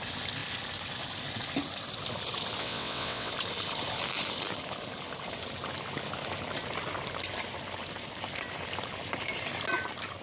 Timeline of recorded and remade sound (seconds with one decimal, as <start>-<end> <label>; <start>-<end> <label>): 0.0-2.6 recorded; 2.6-3.3 remade; 3.3-10.2 recorded